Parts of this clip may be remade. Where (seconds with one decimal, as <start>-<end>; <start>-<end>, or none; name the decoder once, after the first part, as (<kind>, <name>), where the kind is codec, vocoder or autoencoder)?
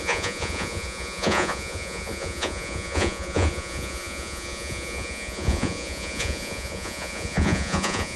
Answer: 0.0-8.2 (vocoder, Vocos)